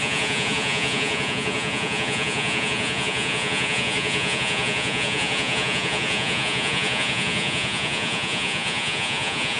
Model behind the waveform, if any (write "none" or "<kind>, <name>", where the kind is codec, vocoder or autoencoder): vocoder, Vocos